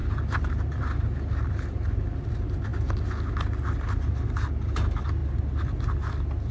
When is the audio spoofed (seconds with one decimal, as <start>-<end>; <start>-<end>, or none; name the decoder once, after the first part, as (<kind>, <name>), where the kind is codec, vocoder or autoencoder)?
none